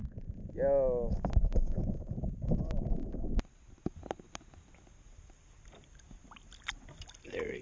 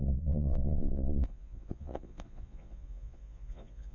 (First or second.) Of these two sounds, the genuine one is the first